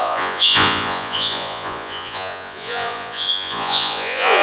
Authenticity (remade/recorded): remade